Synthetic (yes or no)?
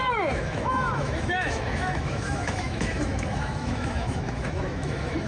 yes